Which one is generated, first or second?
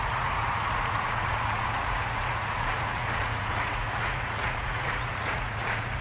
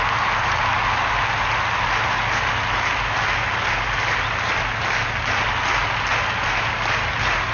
first